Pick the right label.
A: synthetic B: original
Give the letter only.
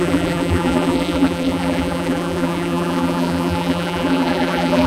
A